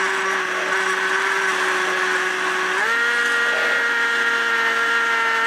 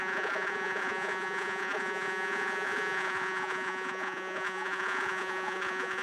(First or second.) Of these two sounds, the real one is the first